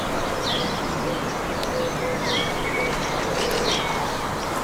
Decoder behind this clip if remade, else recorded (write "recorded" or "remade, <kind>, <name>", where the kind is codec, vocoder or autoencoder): recorded